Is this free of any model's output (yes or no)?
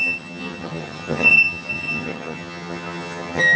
no